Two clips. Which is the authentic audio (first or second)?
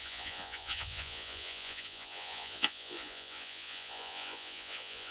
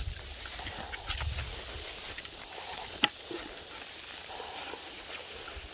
second